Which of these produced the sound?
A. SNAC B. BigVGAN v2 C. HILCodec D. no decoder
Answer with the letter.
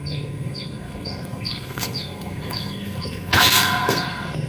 A